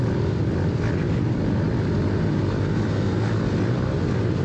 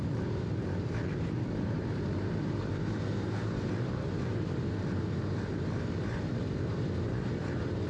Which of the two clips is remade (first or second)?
second